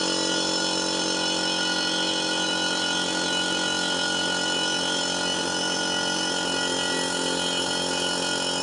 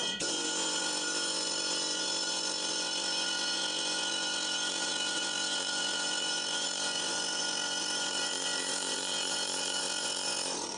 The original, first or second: first